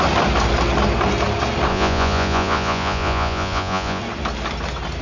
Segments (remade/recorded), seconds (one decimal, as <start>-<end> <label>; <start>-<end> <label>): 0.0-1.7 recorded; 1.7-4.0 remade; 4.0-5.0 recorded